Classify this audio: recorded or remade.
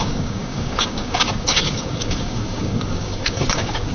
remade